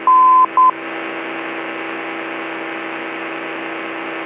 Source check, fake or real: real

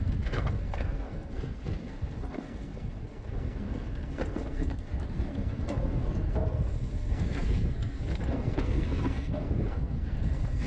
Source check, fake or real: fake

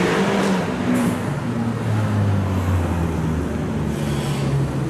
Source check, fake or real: real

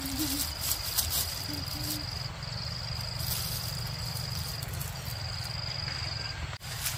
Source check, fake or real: real